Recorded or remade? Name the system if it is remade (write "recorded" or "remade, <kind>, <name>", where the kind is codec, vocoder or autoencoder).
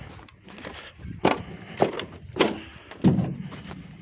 recorded